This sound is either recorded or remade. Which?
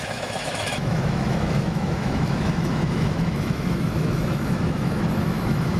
remade